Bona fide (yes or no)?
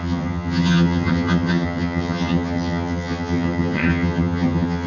no